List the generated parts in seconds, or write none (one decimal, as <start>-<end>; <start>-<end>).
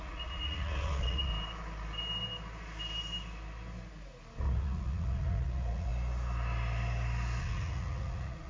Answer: 0.0-1.3; 4.4-5.9; 7.4-8.5